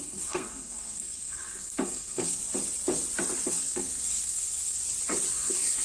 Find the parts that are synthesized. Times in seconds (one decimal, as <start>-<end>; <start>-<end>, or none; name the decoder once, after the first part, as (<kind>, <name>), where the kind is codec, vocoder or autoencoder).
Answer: 0.0-2.4 (codec, SNAC); 3.5-4.8; 5.3-5.8